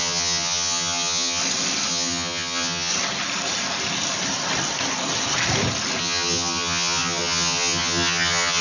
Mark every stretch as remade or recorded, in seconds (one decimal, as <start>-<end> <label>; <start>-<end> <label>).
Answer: 0.0-1.4 remade; 1.4-1.9 recorded; 1.9-2.9 remade; 2.9-6.0 recorded; 6.0-8.6 remade